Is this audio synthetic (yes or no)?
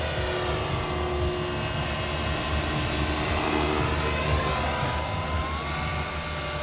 no